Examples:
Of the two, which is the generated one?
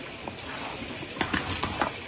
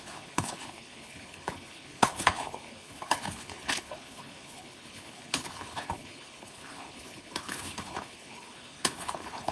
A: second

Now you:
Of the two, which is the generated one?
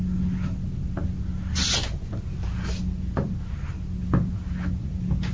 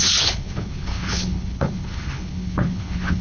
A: second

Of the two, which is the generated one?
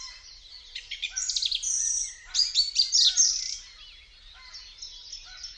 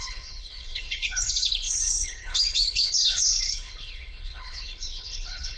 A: second